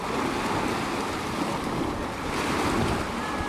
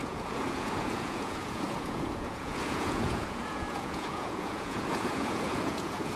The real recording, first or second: first